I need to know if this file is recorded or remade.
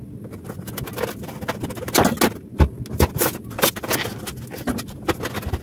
recorded